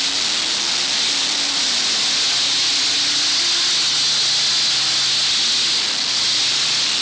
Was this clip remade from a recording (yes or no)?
no